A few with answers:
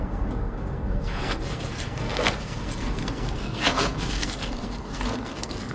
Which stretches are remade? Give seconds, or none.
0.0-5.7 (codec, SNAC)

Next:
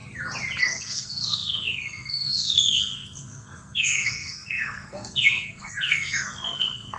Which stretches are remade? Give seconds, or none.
0.6-7.0 (codec, SNAC)

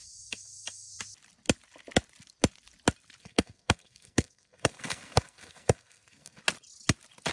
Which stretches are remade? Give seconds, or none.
0.0-0.9 (codec, SNAC); 3.2-6.4

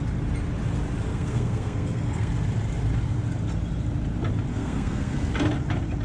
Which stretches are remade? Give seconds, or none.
1.1-2.3 (codec, SNAC); 4.5-5.3

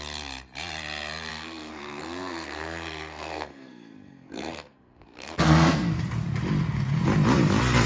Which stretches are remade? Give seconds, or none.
1.3-6.0 (codec, SNAC)

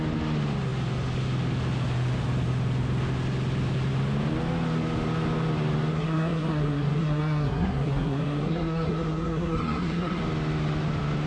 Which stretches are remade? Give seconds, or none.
5.9-10.2 (codec, SNAC)

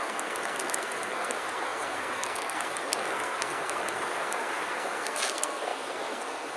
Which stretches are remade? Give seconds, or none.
0.0-6.6 (codec, SNAC)